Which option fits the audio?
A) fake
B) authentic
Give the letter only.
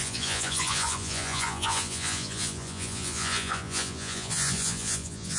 A